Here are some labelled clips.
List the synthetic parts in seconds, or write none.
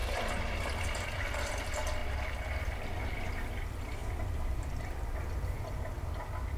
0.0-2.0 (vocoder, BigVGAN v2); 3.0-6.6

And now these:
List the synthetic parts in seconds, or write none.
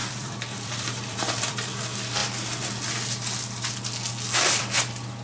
0.0-1.7 (vocoder, BigVGAN v2)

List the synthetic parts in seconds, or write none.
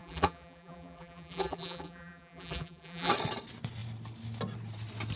0.0-3.1 (vocoder, BigVGAN v2)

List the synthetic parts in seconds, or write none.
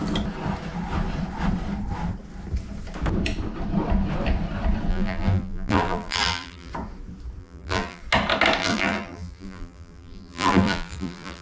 4.9-6.7 (vocoder, BigVGAN v2); 7.4-8.0; 8.6-11.4